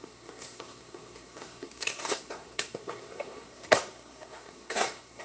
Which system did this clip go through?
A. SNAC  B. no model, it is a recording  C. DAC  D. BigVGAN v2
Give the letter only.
A